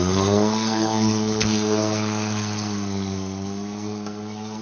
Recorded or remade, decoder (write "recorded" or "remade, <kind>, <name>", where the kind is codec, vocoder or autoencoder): remade, codec, SNAC